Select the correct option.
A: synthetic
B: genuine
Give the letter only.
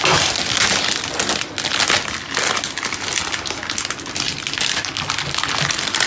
B